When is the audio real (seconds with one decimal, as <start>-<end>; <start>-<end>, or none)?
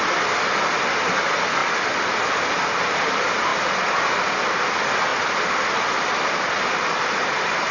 0.0-1.6; 2.2-3.5; 4.3-7.7